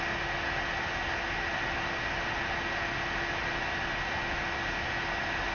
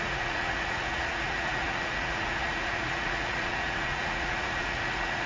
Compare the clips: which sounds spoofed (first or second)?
second